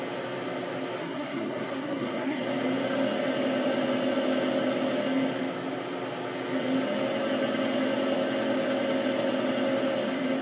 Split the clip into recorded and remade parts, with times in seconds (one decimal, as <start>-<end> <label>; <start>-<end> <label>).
0.0-1.0 recorded; 1.0-2.4 remade; 2.4-10.4 recorded